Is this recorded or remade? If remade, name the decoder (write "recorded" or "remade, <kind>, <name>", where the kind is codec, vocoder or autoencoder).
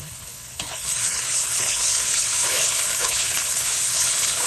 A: remade, codec, HILCodec